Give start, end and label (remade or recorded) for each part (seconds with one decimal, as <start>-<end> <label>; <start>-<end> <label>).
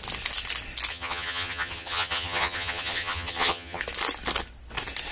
0.0-0.9 recorded; 0.9-3.8 remade; 3.8-5.1 recorded